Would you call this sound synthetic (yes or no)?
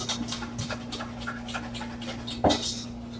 no